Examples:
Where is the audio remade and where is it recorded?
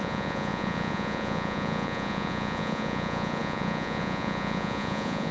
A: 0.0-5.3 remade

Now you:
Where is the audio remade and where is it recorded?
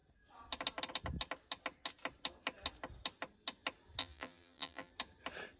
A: 0.0-4.0 recorded; 4.0-4.9 remade; 4.9-5.6 recorded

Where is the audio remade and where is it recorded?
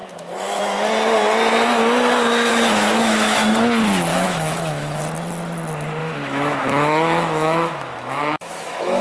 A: 0.0-0.6 remade; 0.6-2.5 recorded; 2.5-3.4 remade; 3.4-4.1 recorded; 4.1-5.0 remade; 5.0-6.0 recorded; 6.0-9.0 remade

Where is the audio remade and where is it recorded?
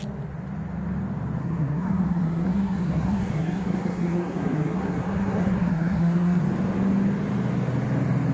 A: 0.0-1.4 recorded; 1.4-6.4 remade; 6.4-8.3 recorded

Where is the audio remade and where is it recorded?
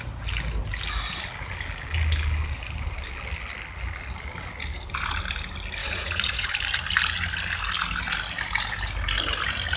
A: 0.0-5.8 recorded; 5.8-6.5 remade; 6.5-9.8 recorded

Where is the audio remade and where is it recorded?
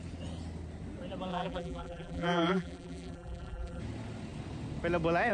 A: 0.0-1.3 recorded; 1.3-3.8 remade; 3.8-5.3 recorded